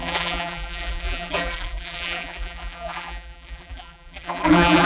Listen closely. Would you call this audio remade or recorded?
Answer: remade